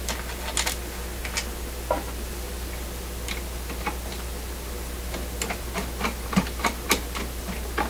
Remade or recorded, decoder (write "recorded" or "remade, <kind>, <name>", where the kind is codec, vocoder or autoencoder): recorded